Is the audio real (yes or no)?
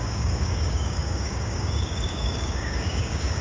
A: no